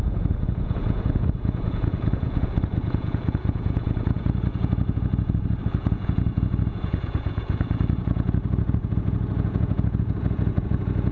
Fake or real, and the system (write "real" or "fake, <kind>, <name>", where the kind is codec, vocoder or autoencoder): fake, vocoder, Vocos